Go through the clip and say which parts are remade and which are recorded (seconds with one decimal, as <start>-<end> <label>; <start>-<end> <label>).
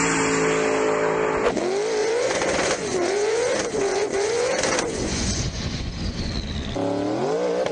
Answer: 0.0-2.0 recorded; 2.0-6.3 remade; 6.3-7.7 recorded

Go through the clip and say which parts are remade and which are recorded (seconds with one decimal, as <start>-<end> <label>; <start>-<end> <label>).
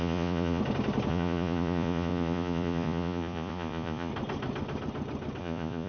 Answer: 0.0-0.6 remade; 0.6-1.1 recorded; 1.1-4.1 remade; 4.1-5.4 recorded; 5.4-5.9 remade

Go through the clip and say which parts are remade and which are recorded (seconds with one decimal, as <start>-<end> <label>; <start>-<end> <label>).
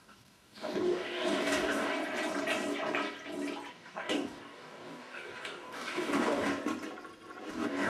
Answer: 0.0-1.9 remade; 1.9-3.7 recorded; 3.7-6.5 remade; 6.5-7.5 recorded; 7.5-7.9 remade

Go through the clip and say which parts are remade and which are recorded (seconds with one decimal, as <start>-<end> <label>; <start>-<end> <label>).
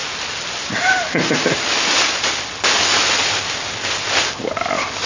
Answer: 0.0-5.1 recorded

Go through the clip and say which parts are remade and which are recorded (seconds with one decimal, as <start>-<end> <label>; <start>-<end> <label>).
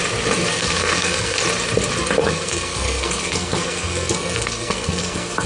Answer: 0.0-0.5 recorded; 0.5-1.4 remade; 1.4-2.2 recorded; 2.2-5.5 remade